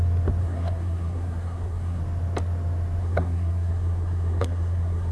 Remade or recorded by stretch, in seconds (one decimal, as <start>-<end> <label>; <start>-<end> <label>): 0.0-0.4 recorded; 0.4-2.0 remade; 2.0-3.0 recorded; 3.0-5.1 remade